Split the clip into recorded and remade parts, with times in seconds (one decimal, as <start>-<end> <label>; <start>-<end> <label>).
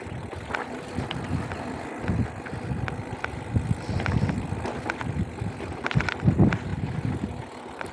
0.0-7.9 recorded